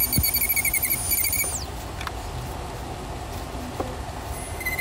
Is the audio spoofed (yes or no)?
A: no